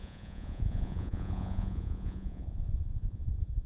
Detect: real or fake fake